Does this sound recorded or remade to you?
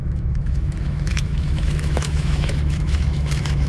remade